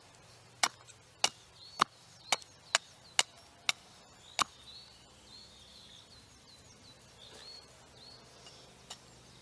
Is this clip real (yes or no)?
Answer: yes